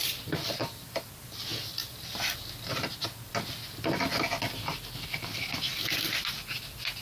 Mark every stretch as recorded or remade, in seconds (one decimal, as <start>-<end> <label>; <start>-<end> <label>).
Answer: 0.0-7.0 recorded